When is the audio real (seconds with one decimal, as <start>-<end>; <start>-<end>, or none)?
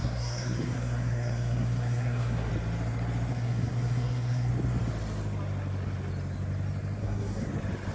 2.5-3.3; 4.5-7.0; 7.5-7.9